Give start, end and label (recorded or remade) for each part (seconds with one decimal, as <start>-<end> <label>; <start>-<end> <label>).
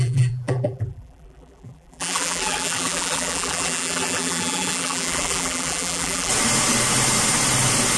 0.0-6.3 remade; 6.3-8.0 recorded